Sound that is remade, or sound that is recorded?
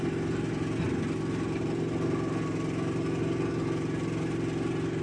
recorded